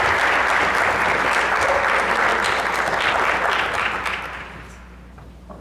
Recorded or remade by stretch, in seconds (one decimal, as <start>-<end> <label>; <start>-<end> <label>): 0.0-5.6 recorded